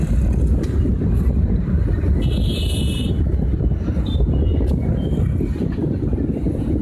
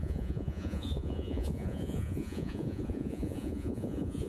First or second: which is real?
first